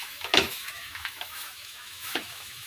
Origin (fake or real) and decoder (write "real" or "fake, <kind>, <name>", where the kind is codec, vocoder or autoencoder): fake, autoencoder, DAC-VAE